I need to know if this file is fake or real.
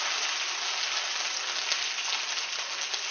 real